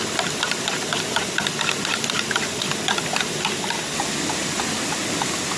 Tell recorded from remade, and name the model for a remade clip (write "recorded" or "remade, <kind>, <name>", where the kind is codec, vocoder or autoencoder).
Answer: recorded